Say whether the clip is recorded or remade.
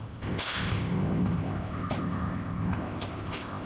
remade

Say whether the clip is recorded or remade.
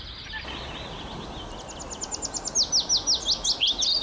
recorded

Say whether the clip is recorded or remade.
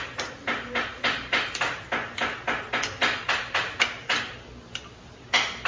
recorded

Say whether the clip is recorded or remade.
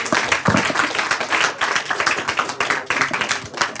recorded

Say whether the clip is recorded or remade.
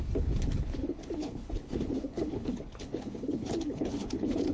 remade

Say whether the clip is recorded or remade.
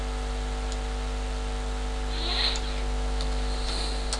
recorded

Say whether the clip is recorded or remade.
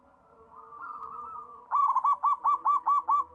recorded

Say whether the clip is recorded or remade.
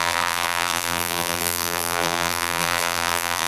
remade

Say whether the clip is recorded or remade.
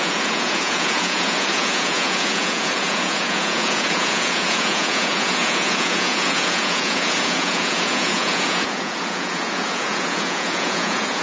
remade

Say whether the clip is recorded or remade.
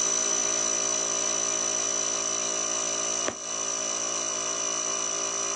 recorded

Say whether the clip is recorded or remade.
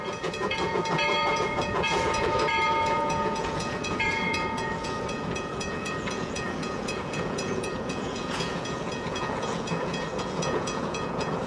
remade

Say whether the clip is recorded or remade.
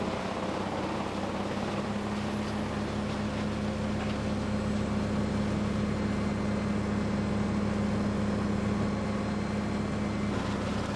recorded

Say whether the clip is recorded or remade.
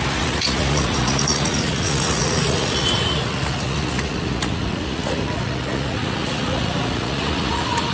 remade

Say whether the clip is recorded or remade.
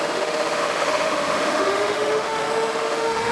remade